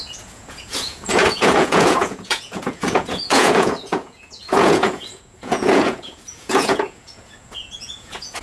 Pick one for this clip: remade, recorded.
remade